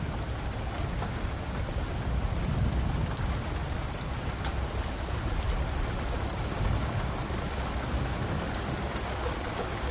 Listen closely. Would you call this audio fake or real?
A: real